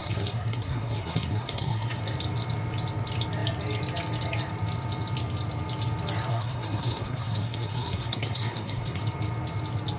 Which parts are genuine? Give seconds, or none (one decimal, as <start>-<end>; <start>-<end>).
2.0-6.3; 9.0-10.0